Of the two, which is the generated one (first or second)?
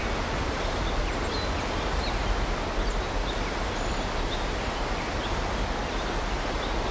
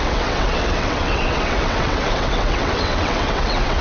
second